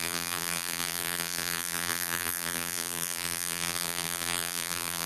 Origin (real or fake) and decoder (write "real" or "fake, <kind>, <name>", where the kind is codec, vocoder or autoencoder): fake, vocoder, BigVGAN v2